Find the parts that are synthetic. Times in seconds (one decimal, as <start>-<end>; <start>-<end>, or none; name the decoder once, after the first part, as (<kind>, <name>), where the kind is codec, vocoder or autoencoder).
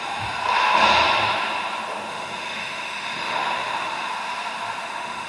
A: 0.0-0.4 (autoencoder, DAC-VAE); 2.1-4.1; 4.8-5.3